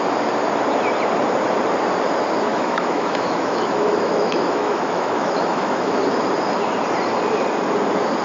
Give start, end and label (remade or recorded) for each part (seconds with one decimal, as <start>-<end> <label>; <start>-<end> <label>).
0.0-2.5 recorded; 2.5-6.0 remade; 6.0-8.2 recorded